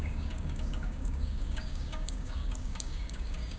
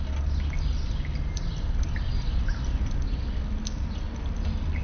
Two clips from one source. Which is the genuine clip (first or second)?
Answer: second